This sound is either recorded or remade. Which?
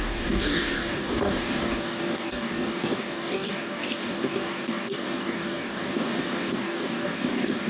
remade